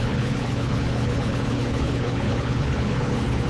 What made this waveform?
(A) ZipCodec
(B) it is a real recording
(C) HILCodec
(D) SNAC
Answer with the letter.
C